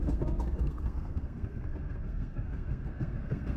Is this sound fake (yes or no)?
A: yes